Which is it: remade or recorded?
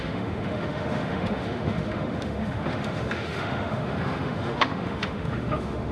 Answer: remade